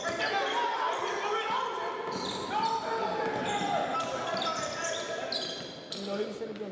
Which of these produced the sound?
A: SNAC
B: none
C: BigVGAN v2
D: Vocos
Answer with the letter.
B